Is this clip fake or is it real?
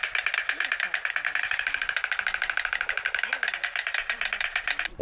fake